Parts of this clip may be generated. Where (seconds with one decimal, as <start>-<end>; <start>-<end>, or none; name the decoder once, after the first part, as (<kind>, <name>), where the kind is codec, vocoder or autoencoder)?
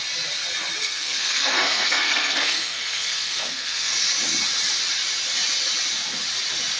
0.8-3.9 (codec, SNAC)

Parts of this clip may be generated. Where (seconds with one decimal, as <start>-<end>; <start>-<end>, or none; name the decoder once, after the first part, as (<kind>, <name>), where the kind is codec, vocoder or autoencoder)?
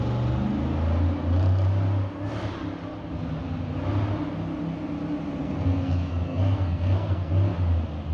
5.4-7.3 (codec, SNAC)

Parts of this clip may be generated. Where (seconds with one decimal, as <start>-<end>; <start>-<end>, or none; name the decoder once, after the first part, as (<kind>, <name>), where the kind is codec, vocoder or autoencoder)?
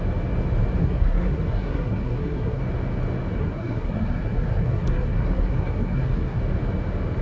0.8-2.6 (codec, SNAC); 3.4-6.4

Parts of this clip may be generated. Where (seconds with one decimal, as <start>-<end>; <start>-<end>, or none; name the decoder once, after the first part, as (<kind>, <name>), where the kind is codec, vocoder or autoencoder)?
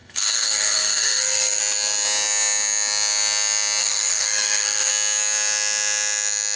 0.0-1.6 (codec, SNAC); 3.8-4.9